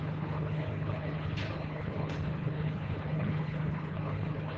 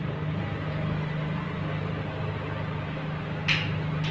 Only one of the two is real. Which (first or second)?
second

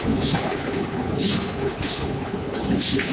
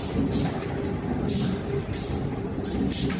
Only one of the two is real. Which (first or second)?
second